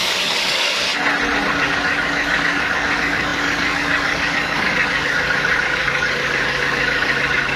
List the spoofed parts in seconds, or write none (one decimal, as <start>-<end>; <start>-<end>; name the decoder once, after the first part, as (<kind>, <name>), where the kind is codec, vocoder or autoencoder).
0.0-0.9 (codec, DAC); 1.5-7.6